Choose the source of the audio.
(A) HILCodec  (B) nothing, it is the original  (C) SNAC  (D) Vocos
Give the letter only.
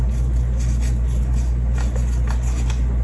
B